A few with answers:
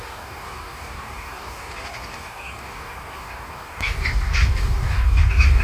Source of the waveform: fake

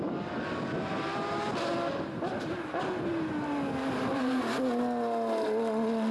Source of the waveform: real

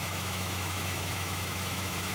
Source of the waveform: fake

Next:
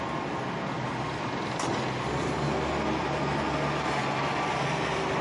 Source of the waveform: real